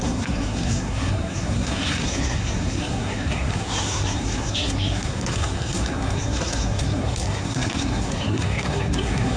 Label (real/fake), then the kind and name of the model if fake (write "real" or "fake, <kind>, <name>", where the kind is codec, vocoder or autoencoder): fake, codec, SNAC